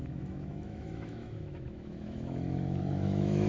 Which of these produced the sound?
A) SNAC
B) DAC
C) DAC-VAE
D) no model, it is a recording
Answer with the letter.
C